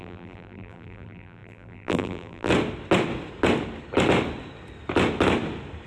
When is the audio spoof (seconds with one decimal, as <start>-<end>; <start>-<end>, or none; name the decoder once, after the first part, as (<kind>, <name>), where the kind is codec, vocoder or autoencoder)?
0.0-2.5 (vocoder, BigVGAN v2)